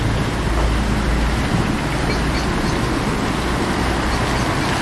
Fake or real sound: real